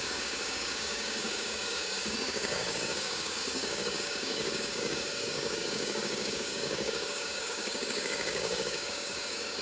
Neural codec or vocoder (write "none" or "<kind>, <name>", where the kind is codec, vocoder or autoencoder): codec, DAC